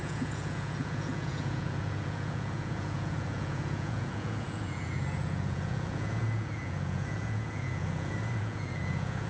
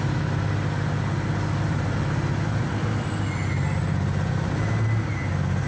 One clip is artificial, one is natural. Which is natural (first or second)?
second